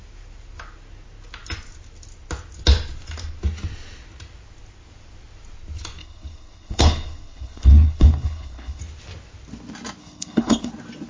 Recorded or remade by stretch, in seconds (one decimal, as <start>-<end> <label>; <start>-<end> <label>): 0.0-6.0 recorded; 6.0-8.8 remade; 8.8-10.0 recorded; 10.0-10.7 remade; 10.7-11.1 recorded

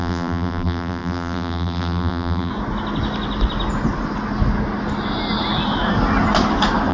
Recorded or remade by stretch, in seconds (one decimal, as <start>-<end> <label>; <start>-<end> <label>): 0.0-2.5 remade; 2.5-6.9 recorded

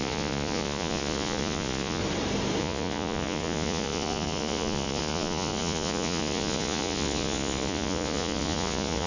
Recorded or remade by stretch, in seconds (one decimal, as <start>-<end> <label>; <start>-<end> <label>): 0.0-2.0 remade; 2.0-2.6 recorded; 2.6-9.1 remade

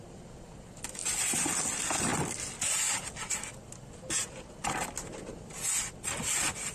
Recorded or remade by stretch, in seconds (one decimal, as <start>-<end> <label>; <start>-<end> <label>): 0.0-6.7 recorded

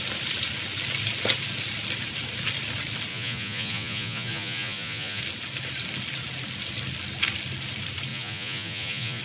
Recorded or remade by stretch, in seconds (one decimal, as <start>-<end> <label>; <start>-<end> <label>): 0.0-3.1 recorded; 3.1-5.2 remade; 5.2-8.1 recorded; 8.1-9.2 remade

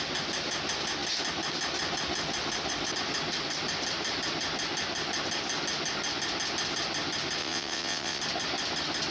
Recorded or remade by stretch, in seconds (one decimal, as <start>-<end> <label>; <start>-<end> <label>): 0.0-7.4 recorded; 7.4-8.2 remade; 8.2-9.1 recorded

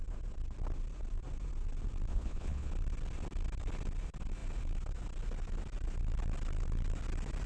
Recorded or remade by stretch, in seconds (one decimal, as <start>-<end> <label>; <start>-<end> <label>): 0.0-2.1 recorded; 2.1-2.7 remade; 2.7-7.5 recorded

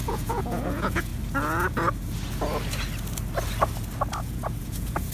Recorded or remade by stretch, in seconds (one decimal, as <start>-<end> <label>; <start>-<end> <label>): 0.0-1.1 remade; 1.1-4.2 recorded; 4.2-5.1 remade